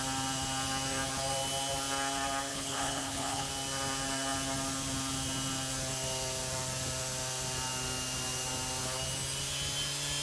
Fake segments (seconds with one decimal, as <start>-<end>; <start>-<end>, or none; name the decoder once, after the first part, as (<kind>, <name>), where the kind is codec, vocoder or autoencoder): 2.5-3.5 (codec, HILCodec)